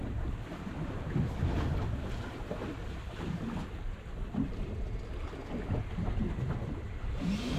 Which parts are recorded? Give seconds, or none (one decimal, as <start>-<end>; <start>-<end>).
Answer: 0.0-7.6